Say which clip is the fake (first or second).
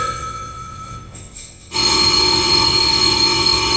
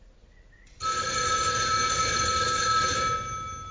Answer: first